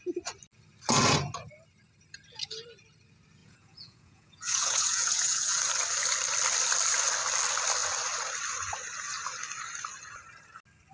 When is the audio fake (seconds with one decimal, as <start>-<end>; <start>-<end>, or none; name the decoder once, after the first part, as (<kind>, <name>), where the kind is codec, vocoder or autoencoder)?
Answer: 3.4-5.6 (vocoder, Vocos)